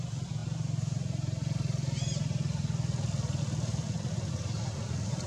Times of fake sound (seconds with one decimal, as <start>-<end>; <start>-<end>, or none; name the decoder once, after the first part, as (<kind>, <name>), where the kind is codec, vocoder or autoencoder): none